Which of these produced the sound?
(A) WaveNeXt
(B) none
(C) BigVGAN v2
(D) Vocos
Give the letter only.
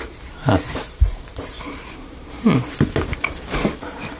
C